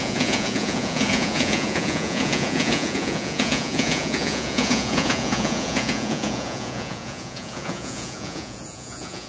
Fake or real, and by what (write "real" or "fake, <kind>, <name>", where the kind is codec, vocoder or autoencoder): fake, vocoder, Vocos